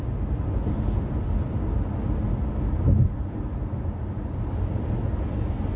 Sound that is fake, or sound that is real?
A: real